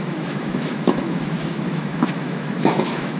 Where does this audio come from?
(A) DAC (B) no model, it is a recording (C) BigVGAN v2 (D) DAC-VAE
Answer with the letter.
D